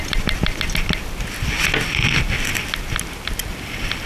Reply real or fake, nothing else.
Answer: real